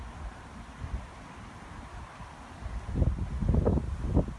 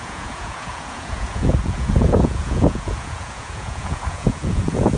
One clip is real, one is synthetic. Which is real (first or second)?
first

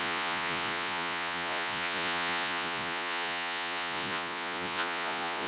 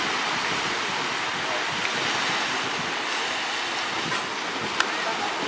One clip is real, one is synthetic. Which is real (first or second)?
second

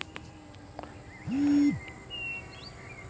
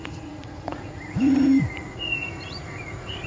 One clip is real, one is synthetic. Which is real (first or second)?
first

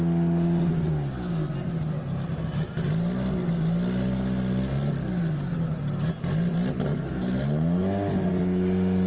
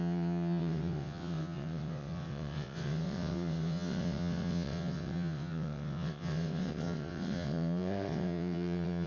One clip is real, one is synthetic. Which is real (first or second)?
first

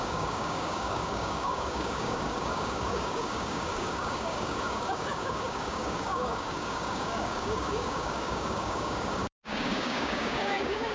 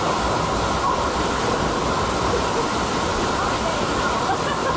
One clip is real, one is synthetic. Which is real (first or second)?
second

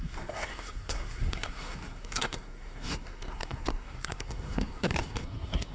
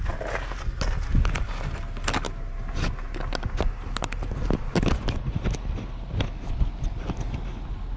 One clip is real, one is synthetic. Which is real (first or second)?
second